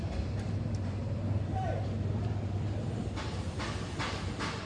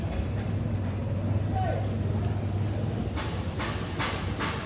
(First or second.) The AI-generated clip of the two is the first